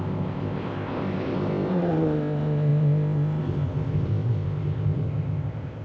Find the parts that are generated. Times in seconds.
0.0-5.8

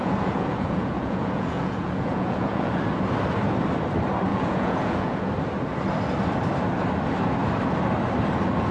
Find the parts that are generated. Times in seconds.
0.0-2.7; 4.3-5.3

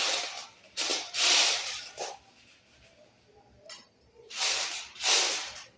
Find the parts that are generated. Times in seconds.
0.9-2.2